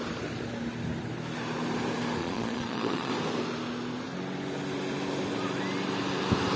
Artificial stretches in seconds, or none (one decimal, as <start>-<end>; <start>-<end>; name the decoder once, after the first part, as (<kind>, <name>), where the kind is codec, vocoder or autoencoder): 2.2-3.1 (vocoder, Vocos)